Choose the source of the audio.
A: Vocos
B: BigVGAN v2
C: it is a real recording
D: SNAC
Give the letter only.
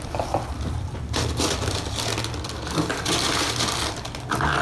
B